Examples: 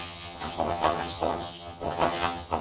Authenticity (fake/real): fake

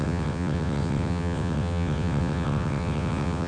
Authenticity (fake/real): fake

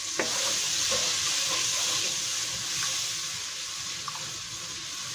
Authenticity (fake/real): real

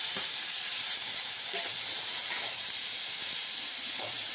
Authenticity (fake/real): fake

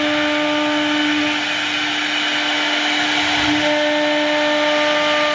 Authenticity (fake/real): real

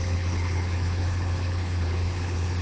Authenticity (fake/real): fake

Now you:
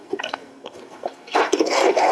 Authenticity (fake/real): fake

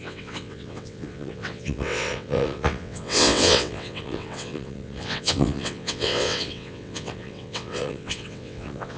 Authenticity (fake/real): fake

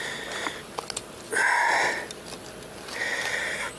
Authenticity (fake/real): real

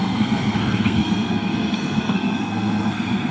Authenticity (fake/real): fake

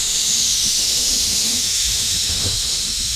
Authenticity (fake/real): fake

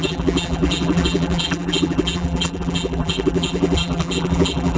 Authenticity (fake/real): fake